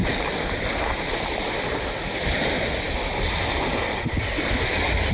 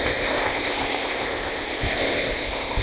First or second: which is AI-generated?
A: second